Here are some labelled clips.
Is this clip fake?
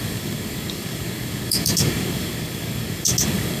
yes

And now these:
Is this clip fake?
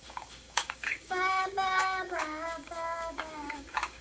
yes